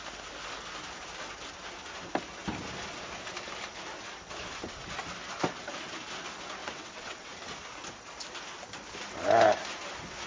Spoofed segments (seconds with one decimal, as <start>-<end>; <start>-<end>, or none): 6.6-7.3